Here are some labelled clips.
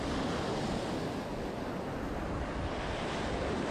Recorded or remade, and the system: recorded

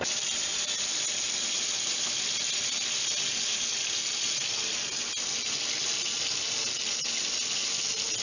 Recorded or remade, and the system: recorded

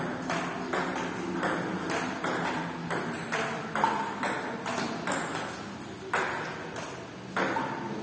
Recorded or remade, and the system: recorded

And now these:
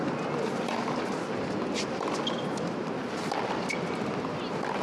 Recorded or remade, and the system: recorded